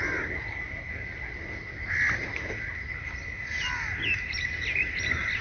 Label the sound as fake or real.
real